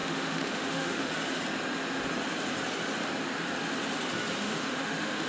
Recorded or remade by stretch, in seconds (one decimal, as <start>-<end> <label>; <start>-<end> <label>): 0.0-1.1 remade; 1.1-4.4 recorded; 4.4-5.3 remade